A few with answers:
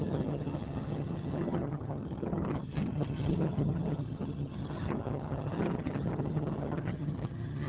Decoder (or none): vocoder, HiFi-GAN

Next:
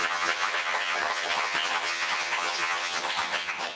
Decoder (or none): vocoder, HiFi-GAN